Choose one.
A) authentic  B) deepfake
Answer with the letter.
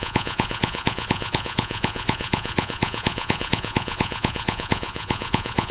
B